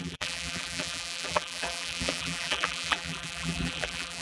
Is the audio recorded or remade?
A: remade